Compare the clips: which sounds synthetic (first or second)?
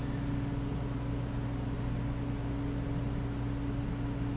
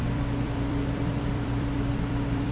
second